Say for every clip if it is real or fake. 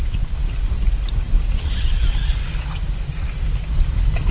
real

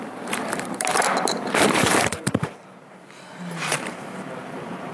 fake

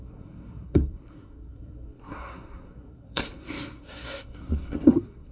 fake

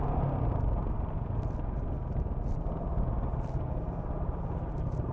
real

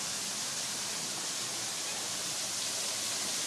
real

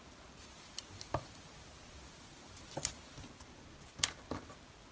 real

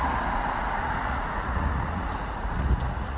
fake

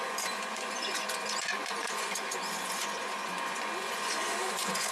fake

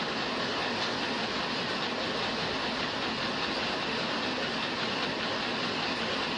real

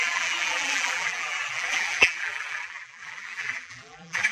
fake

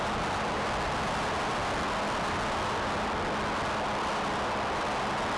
real